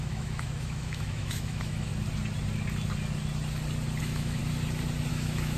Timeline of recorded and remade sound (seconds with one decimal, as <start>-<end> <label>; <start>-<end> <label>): 0.0-1.9 remade; 1.9-4.0 recorded; 4.0-4.4 remade; 4.4-5.1 recorded; 5.1-5.6 remade